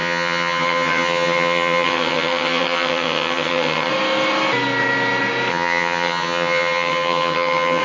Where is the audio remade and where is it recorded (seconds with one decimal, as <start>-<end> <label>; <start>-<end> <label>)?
0.0-3.9 remade; 3.9-5.5 recorded; 5.5-7.8 remade